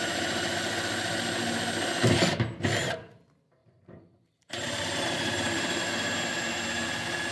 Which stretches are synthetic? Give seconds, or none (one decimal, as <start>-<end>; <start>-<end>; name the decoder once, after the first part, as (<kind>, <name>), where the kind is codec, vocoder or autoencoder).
3.6-6.2 (vocoder, BigVGAN v2)